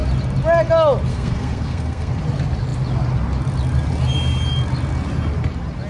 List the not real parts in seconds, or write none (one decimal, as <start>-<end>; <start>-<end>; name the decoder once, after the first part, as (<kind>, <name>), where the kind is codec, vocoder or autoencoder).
1.1-2.2 (codec, SNAC)